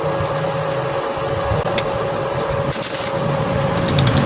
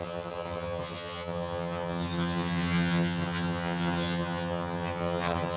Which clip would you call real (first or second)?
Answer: first